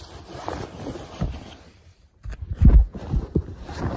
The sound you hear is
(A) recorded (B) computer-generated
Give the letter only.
B